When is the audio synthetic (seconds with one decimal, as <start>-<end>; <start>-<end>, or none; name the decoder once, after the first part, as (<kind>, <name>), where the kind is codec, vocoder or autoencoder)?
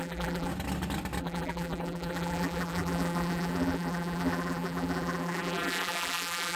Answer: 0.0-0.5 (vocoder, BigVGAN v2); 1.2-6.6